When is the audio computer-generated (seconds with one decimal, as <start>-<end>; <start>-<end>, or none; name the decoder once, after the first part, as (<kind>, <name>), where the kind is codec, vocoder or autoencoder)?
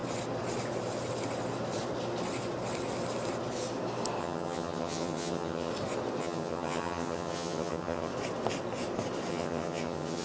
4.2-5.7 (vocoder, HiFi-GAN); 6.2-8.1; 9.3-10.2